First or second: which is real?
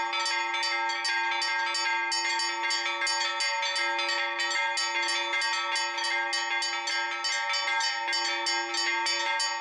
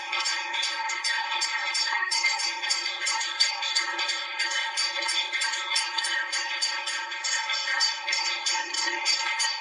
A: first